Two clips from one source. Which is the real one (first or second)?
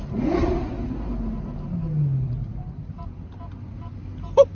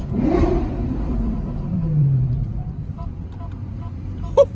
first